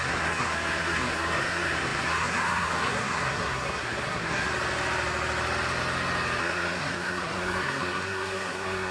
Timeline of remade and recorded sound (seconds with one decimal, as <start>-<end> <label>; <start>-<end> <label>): 0.0-4.5 remade; 4.5-6.4 recorded; 6.4-8.9 remade